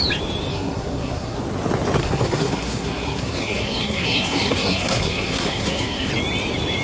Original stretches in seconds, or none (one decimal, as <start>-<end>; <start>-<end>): 0.0-0.5; 1.4-2.0; 6.1-6.8